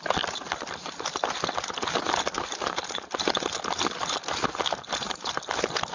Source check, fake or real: real